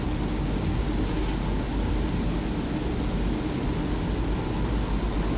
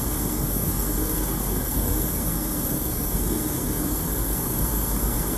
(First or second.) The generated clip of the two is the second